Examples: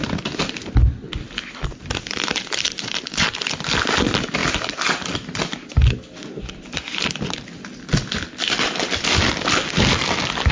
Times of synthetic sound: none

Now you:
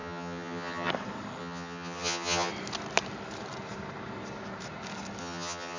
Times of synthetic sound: 0.0-0.9 (vocoder, HiFi-GAN); 1.4-2.5; 5.2-5.8

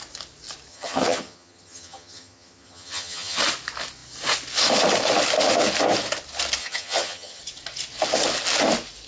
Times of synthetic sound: 0.7-3.4 (vocoder, HiFi-GAN); 6.6-7.4

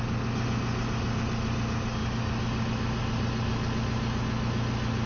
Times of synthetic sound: none

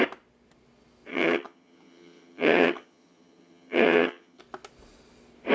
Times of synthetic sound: 1.1-4.4 (vocoder, HiFi-GAN)

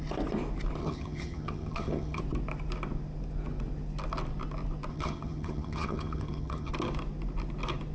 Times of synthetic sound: 0.8-2.2 (vocoder, HiFi-GAN); 4.9-6.7

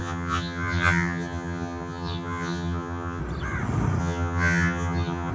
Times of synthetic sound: 0.0-3.2 (vocoder, HiFi-GAN); 4.0-5.3

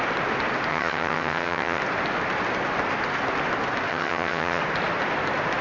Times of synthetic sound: 0.7-1.8 (vocoder, HiFi-GAN); 3.9-4.6